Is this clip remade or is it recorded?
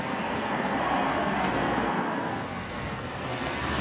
remade